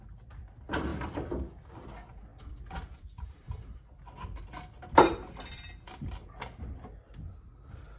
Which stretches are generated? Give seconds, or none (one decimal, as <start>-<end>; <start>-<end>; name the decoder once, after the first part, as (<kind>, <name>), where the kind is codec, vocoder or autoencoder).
0.9-1.5 (vocoder, BigVGAN v2); 2.3-6.1